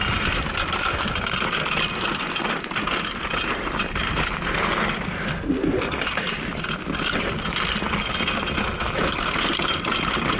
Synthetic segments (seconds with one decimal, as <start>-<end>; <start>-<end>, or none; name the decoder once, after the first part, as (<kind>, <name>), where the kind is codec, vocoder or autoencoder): none